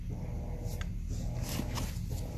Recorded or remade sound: recorded